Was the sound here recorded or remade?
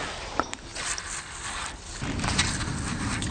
recorded